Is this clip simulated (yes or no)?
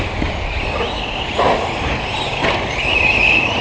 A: no